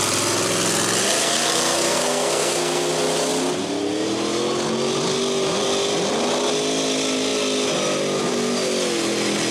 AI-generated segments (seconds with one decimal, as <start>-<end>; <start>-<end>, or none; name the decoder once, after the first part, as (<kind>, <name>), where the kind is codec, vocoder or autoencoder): 1.2-2.9 (codec, SNAC)